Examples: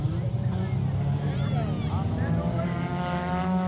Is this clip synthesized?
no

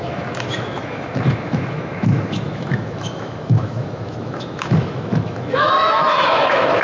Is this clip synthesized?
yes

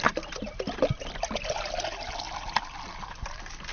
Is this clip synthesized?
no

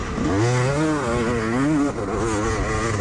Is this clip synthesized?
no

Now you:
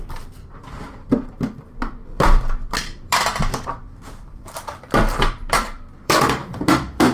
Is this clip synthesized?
yes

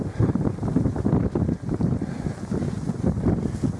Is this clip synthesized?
no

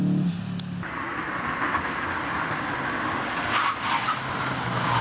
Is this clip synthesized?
no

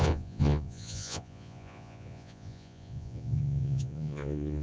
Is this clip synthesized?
yes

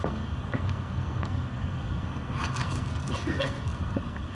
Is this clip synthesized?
yes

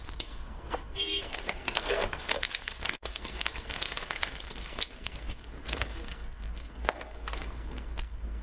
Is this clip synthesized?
yes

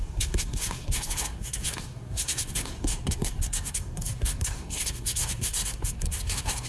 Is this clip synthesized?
yes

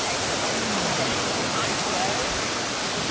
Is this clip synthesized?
no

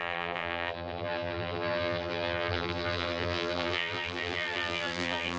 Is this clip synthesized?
yes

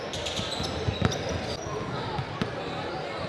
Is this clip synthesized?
no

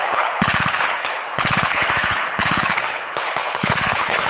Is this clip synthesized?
yes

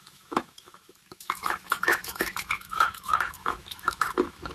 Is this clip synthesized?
yes